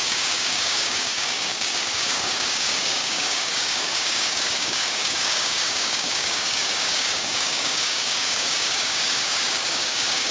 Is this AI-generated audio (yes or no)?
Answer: yes